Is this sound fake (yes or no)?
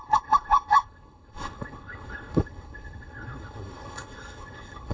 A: yes